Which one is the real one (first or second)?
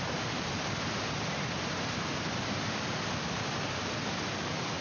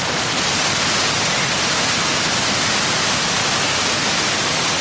second